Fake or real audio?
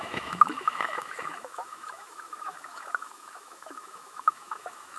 fake